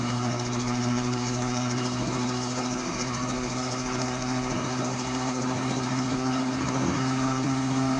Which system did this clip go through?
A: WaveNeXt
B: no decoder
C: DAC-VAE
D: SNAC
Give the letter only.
D